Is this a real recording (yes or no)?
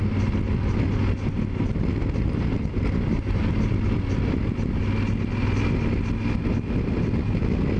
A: yes